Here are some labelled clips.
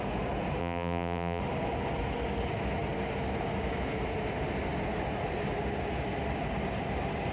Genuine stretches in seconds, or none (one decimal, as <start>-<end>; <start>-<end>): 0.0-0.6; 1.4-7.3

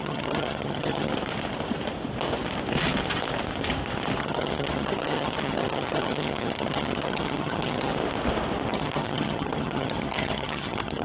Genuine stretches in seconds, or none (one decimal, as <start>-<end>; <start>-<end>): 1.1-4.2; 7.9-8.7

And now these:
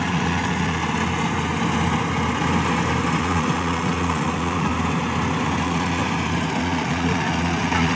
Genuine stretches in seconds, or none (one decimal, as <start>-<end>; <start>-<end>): 0.8-3.2; 4.7-5.6; 6.0-6.6